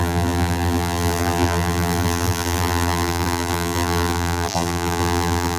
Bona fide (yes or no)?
no